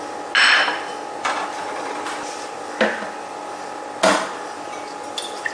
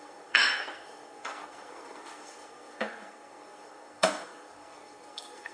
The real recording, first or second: first